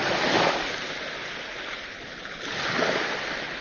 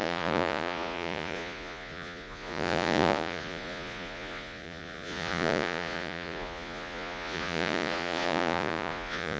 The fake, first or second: second